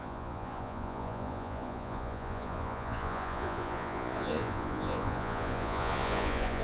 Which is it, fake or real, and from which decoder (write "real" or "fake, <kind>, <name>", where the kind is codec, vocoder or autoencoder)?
fake, vocoder, Vocos